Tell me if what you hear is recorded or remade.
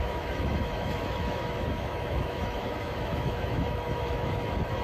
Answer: remade